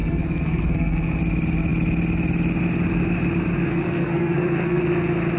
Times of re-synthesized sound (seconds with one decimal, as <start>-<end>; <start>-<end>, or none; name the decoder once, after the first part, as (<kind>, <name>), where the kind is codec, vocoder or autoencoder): 0.0-1.2 (codec, SNAC); 3.7-4.8